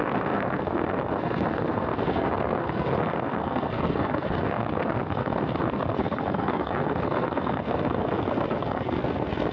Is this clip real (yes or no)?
no